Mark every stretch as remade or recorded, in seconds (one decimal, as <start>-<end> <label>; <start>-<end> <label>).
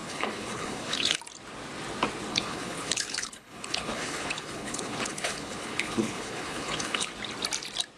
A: 0.0-1.2 remade; 1.2-2.3 recorded; 2.3-7.1 remade; 7.1-8.0 recorded